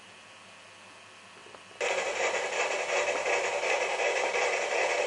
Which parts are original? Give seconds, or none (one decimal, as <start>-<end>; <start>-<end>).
0.0-5.1